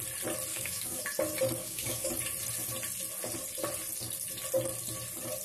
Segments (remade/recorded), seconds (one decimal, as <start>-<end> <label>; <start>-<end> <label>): 0.0-0.5 recorded; 0.5-1.0 remade; 1.0-1.6 recorded; 1.6-2.1 remade; 2.1-5.4 recorded